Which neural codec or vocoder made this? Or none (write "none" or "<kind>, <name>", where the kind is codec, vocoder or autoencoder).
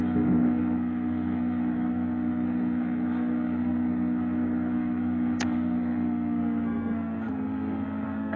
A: codec, SNAC